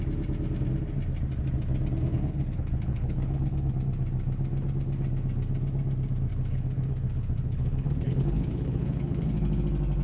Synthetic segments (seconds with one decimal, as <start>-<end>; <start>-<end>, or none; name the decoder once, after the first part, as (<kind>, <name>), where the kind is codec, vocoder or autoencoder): 2.1-3.7 (codec, HILCodec); 6.3-9.6